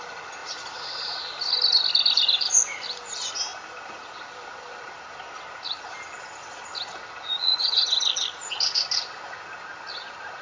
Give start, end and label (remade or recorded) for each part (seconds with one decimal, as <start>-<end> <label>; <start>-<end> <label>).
0.0-10.4 recorded